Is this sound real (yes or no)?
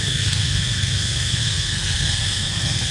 no